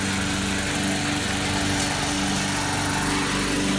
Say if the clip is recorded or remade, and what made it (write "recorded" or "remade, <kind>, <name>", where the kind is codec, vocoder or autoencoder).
recorded